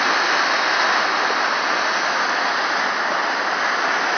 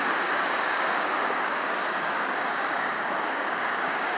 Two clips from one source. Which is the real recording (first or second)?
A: first